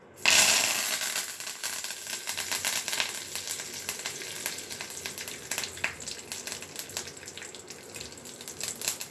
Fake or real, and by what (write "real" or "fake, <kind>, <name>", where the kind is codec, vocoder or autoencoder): real